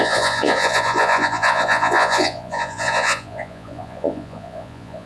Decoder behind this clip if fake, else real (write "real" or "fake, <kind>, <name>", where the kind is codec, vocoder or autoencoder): fake, vocoder, Vocos